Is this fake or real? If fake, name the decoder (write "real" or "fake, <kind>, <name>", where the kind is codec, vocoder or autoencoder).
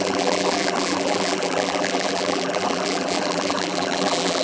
fake, vocoder, BigVGAN v2